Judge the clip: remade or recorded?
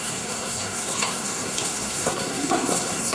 remade